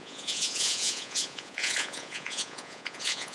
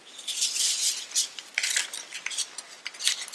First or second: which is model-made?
first